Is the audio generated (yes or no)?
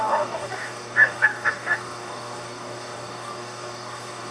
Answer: yes